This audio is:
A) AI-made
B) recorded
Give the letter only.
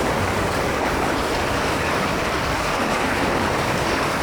A